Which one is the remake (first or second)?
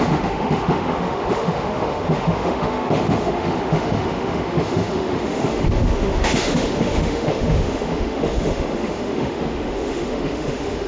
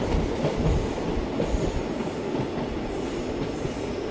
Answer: first